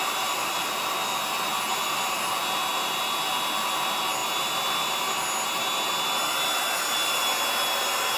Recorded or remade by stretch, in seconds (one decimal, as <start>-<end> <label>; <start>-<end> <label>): 0.0-0.7 remade; 0.7-1.7 recorded; 1.7-2.4 remade; 2.4-8.2 recorded